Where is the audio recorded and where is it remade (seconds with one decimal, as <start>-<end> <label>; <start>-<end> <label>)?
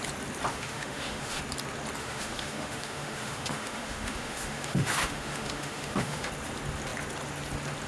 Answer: 0.0-0.5 recorded; 0.5-1.4 remade; 1.4-2.0 recorded; 2.0-6.3 remade; 6.3-7.9 recorded